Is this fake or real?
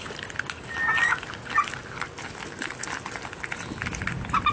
real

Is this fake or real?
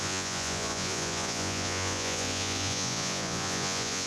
fake